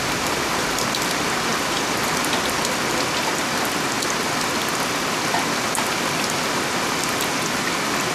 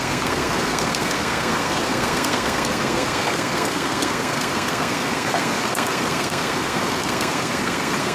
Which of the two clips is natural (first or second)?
first